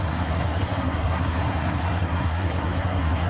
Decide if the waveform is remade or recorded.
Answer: remade